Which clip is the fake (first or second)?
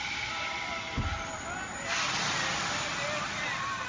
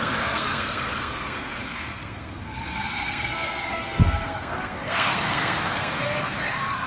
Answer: second